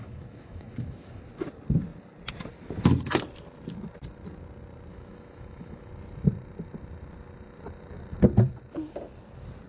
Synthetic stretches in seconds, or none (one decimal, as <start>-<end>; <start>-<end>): 0.0-1.2; 4.9-5.9